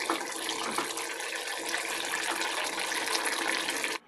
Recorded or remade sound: recorded